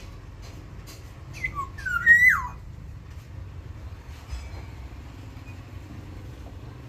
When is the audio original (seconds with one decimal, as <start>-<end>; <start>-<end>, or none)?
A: 0.0-6.9